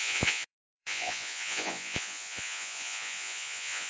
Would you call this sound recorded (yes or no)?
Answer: no